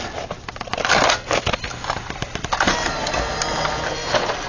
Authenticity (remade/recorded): recorded